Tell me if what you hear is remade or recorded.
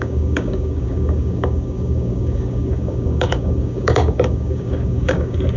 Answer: remade